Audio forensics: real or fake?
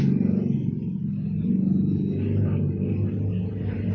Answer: real